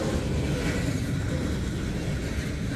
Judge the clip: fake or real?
real